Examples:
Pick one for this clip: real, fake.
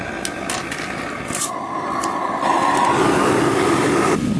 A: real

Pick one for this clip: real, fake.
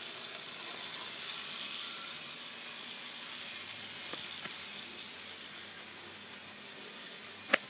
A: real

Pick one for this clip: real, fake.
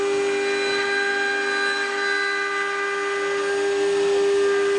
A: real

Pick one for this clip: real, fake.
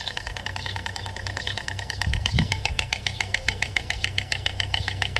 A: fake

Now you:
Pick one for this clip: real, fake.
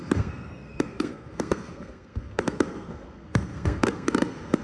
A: fake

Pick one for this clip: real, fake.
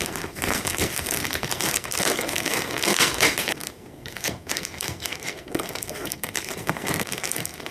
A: fake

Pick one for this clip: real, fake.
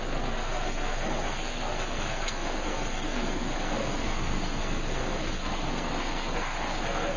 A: fake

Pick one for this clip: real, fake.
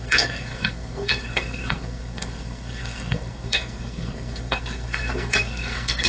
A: fake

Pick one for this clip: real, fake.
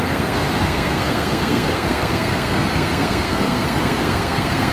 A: fake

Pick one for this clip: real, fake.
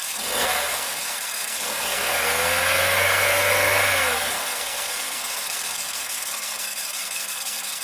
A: fake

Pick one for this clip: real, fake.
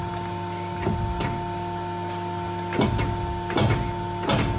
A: real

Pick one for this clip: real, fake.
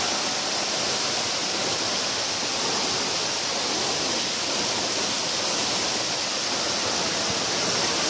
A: real